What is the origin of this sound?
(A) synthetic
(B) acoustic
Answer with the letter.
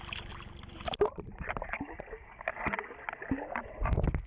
B